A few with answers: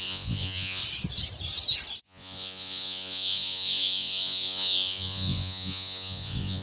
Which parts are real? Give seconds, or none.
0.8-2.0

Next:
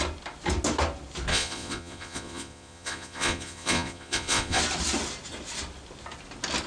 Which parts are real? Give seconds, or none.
0.0-1.3; 4.6-6.7

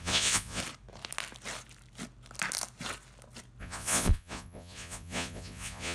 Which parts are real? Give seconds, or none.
0.6-3.6

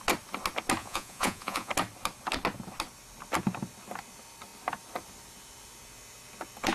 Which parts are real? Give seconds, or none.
0.0-0.8; 1.7-6.7